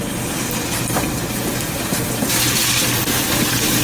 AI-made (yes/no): yes